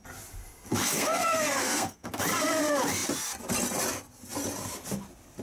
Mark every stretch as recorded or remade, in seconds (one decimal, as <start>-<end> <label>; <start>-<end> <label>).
0.0-0.8 recorded; 0.8-2.2 remade; 2.2-5.4 recorded